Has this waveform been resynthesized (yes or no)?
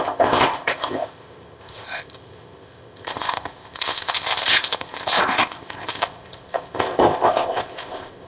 yes